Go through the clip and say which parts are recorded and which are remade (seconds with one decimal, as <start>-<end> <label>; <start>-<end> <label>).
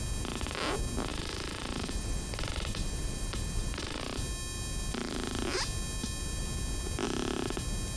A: 0.0-1.1 recorded; 1.1-4.0 remade; 4.0-8.0 recorded